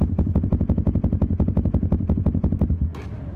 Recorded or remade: recorded